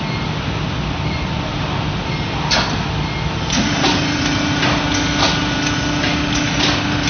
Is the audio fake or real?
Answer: real